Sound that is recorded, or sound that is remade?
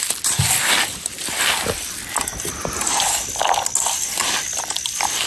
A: recorded